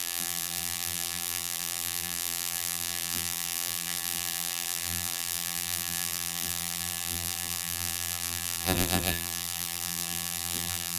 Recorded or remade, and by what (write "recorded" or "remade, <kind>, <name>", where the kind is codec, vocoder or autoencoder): remade, vocoder, BigVGAN v2